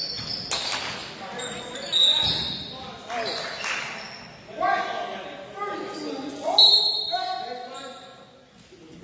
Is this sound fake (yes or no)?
no